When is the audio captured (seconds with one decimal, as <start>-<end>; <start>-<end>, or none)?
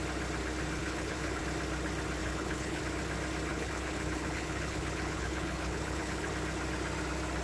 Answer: 0.0-0.8; 1.4-2.2; 2.8-3.5; 6.3-7.4